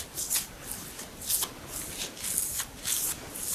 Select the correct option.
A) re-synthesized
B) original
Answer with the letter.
B